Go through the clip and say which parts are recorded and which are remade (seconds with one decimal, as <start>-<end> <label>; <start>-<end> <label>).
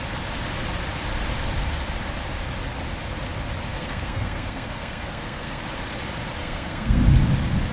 0.0-3.7 recorded; 3.7-5.6 remade; 5.6-6.4 recorded; 6.4-7.0 remade; 7.0-7.7 recorded